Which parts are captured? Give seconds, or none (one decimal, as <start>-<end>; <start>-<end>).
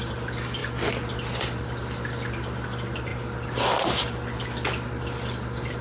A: 0.0-5.8